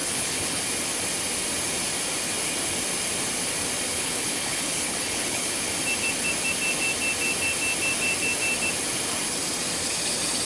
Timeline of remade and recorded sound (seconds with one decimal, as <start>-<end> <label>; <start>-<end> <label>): 0.0-0.6 remade; 0.6-3.9 recorded; 3.9-5.7 remade; 5.7-10.4 recorded